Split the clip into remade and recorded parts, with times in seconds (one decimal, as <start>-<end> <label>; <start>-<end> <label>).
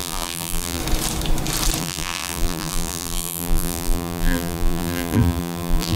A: 0.0-0.8 remade; 0.8-1.8 recorded; 1.8-6.0 remade